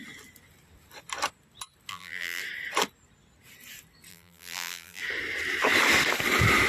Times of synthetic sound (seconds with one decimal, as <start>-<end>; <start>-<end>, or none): 1.9-2.4; 4.1-5.0